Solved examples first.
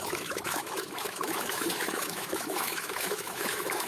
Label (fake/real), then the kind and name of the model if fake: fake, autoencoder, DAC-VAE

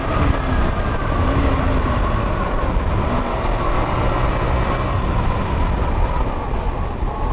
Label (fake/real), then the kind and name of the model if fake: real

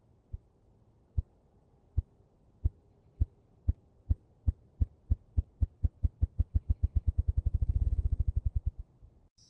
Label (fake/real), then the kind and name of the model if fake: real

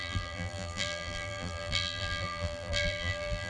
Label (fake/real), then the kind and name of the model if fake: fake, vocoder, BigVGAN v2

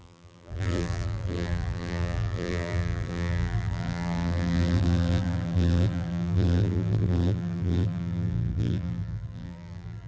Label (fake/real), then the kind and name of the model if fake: fake, vocoder, BigVGAN v2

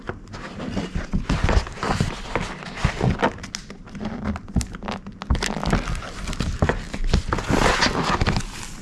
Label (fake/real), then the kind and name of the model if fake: real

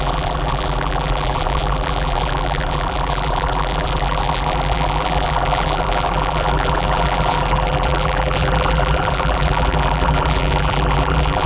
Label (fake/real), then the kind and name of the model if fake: fake, vocoder, BigVGAN v2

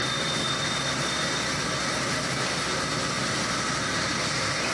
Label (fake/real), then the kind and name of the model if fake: real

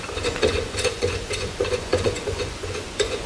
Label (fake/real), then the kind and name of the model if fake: fake, vocoder, Vocos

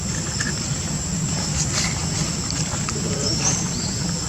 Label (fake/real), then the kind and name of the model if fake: real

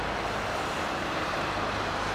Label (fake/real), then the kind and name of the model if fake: fake, vocoder, BigVGAN v2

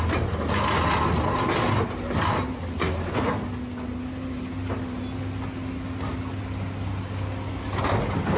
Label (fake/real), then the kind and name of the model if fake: real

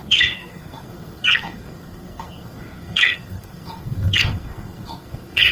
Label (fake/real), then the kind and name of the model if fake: fake, codec, SNAC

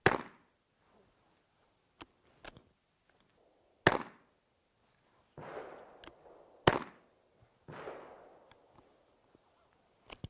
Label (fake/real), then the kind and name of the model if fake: real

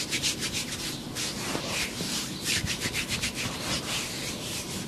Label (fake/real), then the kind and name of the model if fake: fake, vocoder, BigVGAN v2